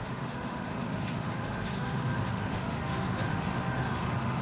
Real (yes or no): no